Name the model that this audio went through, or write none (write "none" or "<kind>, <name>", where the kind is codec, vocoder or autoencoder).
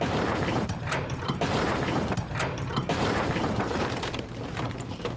vocoder, BigVGAN v2